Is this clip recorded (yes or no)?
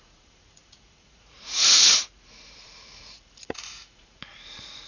no